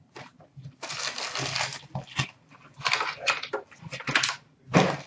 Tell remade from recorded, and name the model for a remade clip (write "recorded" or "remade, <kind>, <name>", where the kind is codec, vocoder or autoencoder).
recorded